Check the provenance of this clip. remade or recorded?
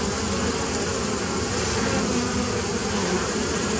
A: recorded